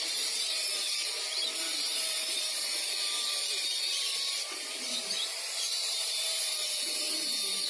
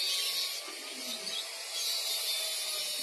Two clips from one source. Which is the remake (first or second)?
first